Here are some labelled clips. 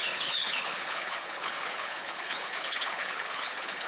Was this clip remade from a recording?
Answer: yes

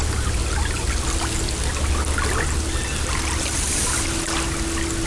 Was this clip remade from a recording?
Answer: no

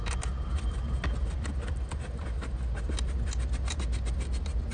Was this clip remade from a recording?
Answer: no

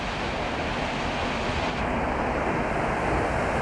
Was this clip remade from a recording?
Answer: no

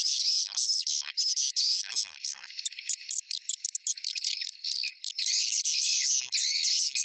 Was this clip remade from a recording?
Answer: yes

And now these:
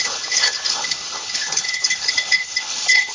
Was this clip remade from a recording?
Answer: yes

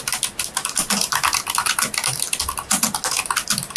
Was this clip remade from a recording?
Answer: no